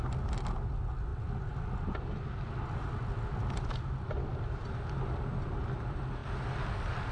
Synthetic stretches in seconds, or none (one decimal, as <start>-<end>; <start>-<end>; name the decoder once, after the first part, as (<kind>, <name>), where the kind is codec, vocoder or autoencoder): none